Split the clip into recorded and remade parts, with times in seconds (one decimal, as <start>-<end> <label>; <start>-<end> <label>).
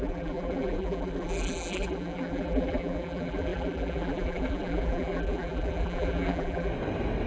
0.0-6.7 remade; 6.7-7.3 recorded